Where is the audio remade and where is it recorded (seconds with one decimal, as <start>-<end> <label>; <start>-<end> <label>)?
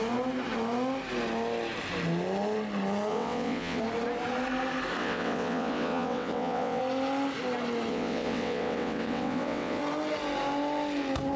0.0-3.1 recorded; 3.1-3.8 remade; 3.8-5.0 recorded; 5.0-6.8 remade; 6.8-7.9 recorded; 7.9-9.8 remade; 9.8-11.4 recorded